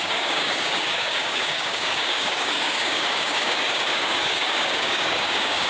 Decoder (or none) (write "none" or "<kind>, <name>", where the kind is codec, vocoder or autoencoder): codec, DAC